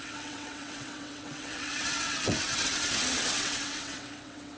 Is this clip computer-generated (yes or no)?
yes